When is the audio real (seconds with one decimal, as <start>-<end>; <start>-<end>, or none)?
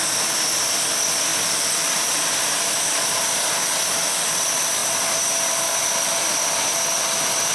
0.0-1.3; 2.6-7.5